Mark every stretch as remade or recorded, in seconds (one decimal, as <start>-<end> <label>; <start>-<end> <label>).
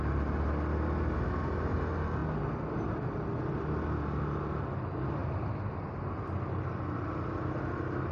0.0-8.1 recorded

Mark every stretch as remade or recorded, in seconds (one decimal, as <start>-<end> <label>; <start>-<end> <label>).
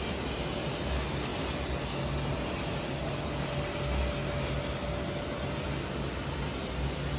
0.0-7.2 recorded